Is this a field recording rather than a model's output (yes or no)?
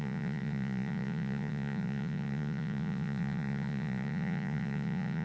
no